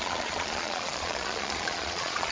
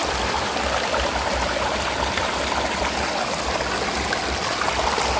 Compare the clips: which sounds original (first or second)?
second